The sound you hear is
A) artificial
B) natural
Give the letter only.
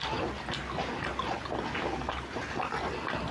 B